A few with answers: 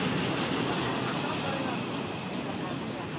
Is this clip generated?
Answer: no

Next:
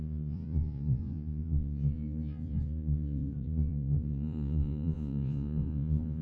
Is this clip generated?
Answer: yes